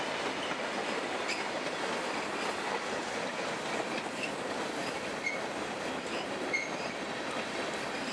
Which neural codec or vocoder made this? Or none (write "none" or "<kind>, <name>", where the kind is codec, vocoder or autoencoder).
none